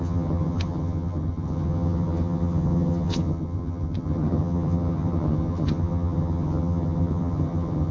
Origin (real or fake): fake